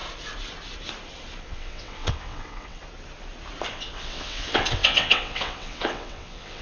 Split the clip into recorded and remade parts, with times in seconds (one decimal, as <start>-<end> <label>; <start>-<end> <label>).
0.0-1.4 recorded; 1.4-2.8 remade; 2.8-3.7 recorded; 3.7-6.6 remade